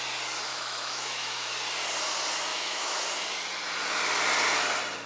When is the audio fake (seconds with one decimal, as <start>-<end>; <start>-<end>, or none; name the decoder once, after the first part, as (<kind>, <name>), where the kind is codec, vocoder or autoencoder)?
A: 0.5-1.5 (autoencoder, DAC-VAE); 2.5-3.0